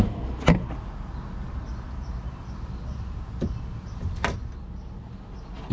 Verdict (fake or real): real